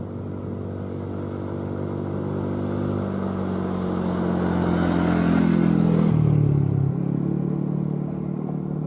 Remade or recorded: recorded